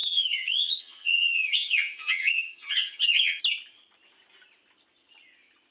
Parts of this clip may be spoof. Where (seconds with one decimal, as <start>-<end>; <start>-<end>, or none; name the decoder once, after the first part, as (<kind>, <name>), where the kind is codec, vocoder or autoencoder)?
0.0-3.4 (vocoder, HiFi-GAN)